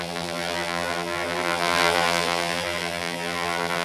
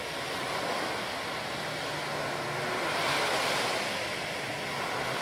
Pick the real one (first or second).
second